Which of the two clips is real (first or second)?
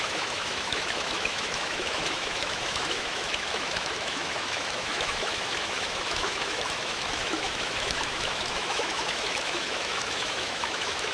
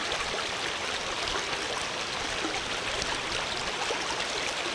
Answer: second